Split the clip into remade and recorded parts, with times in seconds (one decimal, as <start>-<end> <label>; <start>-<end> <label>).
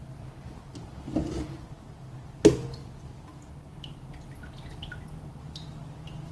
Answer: 0.0-6.3 recorded